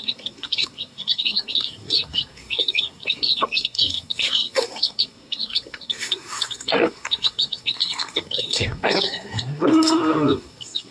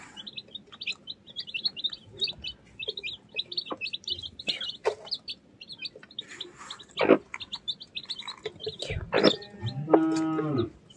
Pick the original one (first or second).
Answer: second